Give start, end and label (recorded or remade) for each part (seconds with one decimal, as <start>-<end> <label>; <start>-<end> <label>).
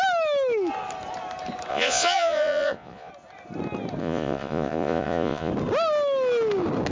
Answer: 0.0-1.7 recorded; 1.7-3.1 remade; 3.1-4.0 recorded; 4.0-5.5 remade; 5.5-6.9 recorded